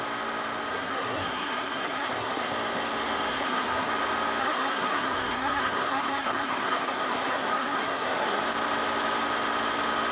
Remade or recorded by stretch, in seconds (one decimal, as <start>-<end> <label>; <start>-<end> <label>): 0.0-0.7 recorded; 0.7-2.5 remade; 2.5-3.3 recorded; 3.3-3.9 remade; 3.9-4.4 recorded; 4.4-8.4 remade; 8.4-10.1 recorded